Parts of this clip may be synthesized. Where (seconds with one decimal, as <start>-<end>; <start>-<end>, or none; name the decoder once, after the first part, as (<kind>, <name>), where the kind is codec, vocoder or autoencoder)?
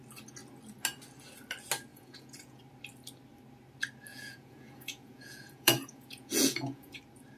1.9-2.6 (vocoder, Vocos); 4.1-7.0